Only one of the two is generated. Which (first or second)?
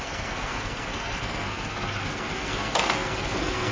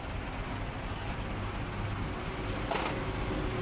first